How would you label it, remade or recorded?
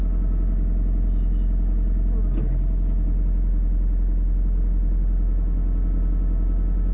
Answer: recorded